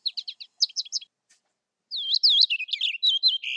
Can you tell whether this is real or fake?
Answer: real